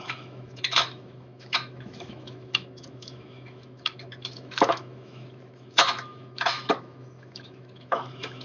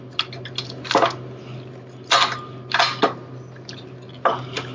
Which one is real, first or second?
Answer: second